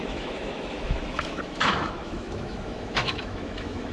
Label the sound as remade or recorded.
remade